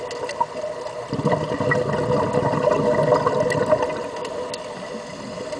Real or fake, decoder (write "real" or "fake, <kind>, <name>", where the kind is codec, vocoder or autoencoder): real